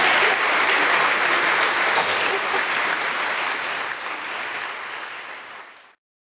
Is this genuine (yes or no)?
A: yes